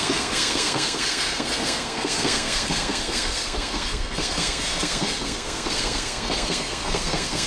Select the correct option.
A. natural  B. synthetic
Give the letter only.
B